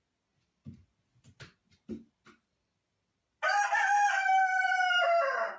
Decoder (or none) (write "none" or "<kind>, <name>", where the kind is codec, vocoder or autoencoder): none